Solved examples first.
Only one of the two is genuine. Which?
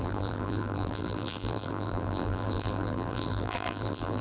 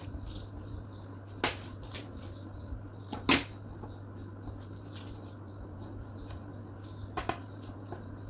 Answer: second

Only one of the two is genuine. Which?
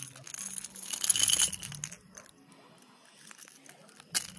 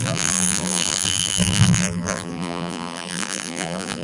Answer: first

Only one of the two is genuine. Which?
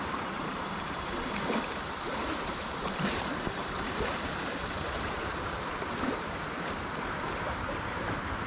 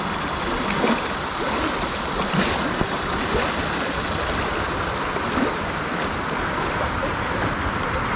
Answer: second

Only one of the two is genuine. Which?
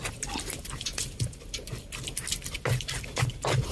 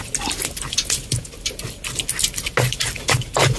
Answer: second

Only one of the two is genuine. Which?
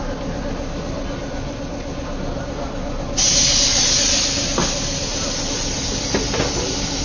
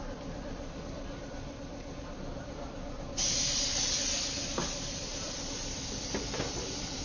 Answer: first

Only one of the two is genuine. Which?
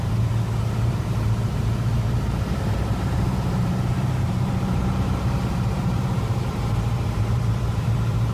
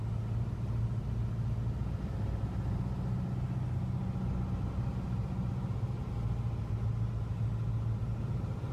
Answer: second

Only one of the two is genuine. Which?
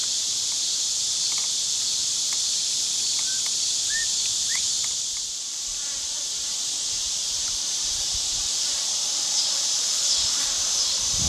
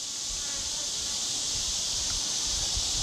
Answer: second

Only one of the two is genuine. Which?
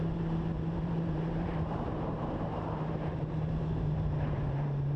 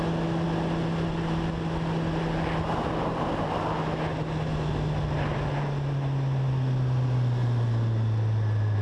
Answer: second